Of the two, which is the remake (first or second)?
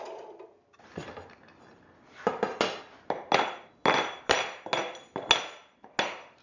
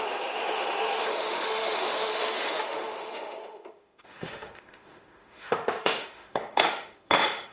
second